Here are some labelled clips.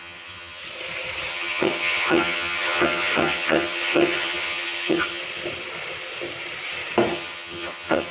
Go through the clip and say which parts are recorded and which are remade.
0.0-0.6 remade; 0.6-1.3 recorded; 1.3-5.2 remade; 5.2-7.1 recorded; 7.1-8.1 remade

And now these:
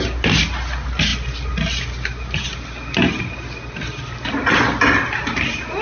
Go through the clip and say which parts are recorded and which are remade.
0.0-5.8 recorded

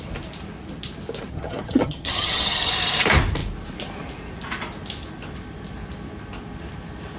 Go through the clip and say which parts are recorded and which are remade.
0.0-1.3 recorded; 1.3-2.7 remade; 2.7-7.2 recorded

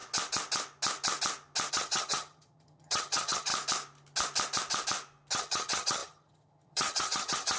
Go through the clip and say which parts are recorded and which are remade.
0.0-1.7 recorded; 1.7-3.5 remade; 3.5-5.3 recorded; 5.3-7.6 remade